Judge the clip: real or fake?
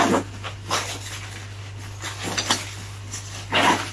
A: real